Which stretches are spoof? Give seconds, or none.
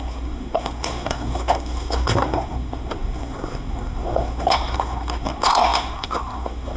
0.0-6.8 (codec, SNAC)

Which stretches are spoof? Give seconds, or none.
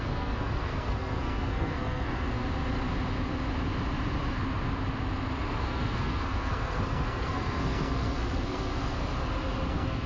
0.0-2.4 (codec, SNAC); 5.6-9.0; 9.7-10.1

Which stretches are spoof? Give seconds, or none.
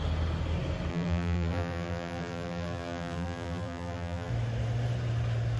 0.9-4.3 (vocoder, BigVGAN v2)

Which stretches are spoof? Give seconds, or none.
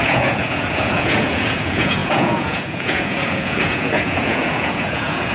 0.0-5.3 (vocoder, Vocos)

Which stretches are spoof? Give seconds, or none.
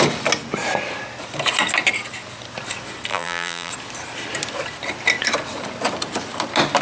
3.1-3.7 (vocoder, BigVGAN v2)